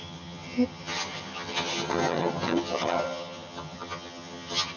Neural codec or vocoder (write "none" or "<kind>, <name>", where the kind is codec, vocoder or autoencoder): vocoder, HiFi-GAN